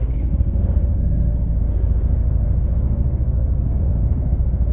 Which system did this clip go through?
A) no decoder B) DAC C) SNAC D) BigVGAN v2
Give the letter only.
C